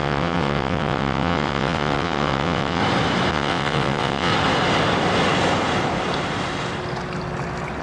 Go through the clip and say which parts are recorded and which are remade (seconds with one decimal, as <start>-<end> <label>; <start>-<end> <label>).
0.0-2.8 remade; 2.8-3.3 recorded; 3.3-4.3 remade; 4.3-7.8 recorded